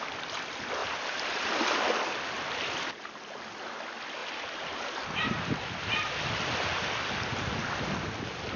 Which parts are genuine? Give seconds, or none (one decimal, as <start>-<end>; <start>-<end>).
0.0-0.8; 1.9-4.2; 5.5-8.6